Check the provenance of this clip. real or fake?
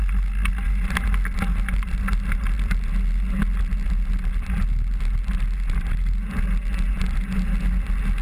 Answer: real